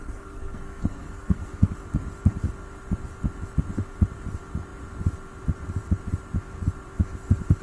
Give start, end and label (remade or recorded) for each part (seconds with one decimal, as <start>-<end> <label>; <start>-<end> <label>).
0.0-1.7 remade; 1.7-7.6 recorded